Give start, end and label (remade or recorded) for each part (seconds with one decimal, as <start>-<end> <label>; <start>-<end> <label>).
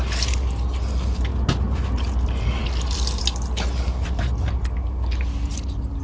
0.0-6.0 recorded